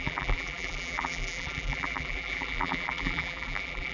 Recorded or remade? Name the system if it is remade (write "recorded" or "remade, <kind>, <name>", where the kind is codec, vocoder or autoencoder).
remade, vocoder, BigVGAN v2